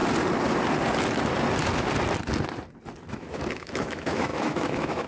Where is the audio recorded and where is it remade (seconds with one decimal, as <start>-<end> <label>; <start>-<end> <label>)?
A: 0.0-3.1 recorded; 3.1-5.1 remade